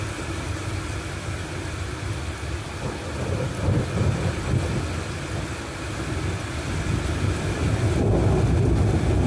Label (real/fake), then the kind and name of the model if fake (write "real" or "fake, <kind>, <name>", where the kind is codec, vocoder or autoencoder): real